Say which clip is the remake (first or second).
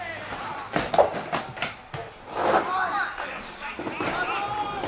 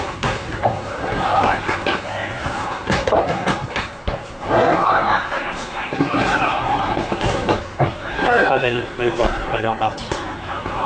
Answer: second